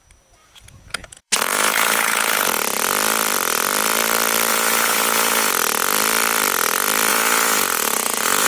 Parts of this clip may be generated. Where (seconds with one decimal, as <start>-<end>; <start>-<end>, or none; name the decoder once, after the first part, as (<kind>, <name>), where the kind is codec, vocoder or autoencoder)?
0.4-2.6 (vocoder, Vocos); 4.5-5.5; 7.1-8.5